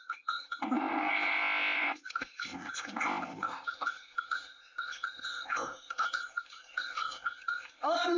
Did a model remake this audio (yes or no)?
yes